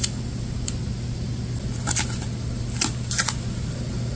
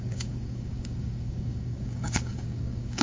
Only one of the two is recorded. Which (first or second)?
first